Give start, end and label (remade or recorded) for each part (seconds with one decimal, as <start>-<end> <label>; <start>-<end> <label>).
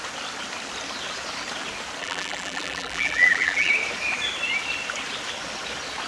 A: 0.0-2.0 recorded; 2.0-3.7 remade; 3.7-6.1 recorded